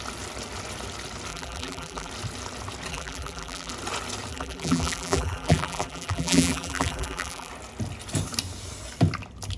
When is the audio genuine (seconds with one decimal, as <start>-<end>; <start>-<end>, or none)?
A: 0.0-1.3; 2.1-2.9; 3.7-4.3; 7.5-9.6